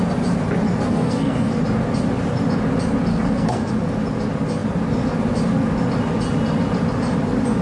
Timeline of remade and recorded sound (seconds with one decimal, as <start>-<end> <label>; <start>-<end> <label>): 0.0-0.9 recorded; 0.9-1.6 remade; 1.6-3.1 recorded; 3.1-3.7 remade; 3.7-7.6 recorded